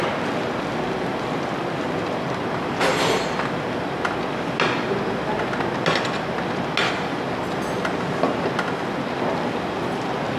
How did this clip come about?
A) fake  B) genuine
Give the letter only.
B